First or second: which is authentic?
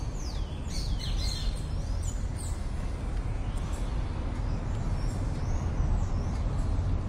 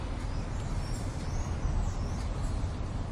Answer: first